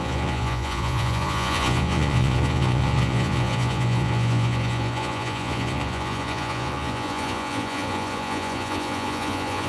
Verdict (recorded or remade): remade